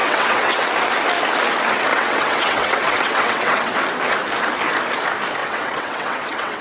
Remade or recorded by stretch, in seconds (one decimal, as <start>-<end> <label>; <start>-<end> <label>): 0.0-0.7 remade; 0.7-1.9 recorded; 1.9-3.8 remade; 3.8-5.4 recorded; 5.4-6.6 remade